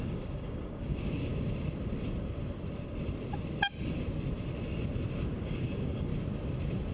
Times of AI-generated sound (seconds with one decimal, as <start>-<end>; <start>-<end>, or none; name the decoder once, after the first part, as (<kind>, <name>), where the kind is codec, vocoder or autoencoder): 0.0-1.3 (codec, DAC); 5.4-6.1